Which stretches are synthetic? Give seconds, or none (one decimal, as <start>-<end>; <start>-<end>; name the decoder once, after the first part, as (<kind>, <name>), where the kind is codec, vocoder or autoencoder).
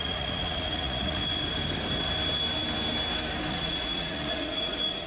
0.0-1.2 (vocoder, Vocos); 3.5-5.1